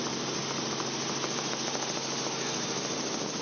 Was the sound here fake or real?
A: real